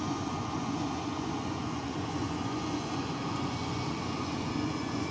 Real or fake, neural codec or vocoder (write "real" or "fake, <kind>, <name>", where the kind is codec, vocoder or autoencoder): fake, vocoder, Vocos